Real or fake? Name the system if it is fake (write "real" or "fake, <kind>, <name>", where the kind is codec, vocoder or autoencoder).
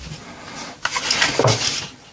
real